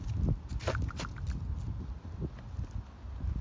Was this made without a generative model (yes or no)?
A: yes